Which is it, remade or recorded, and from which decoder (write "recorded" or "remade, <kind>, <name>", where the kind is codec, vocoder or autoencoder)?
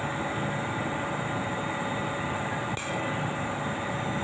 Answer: recorded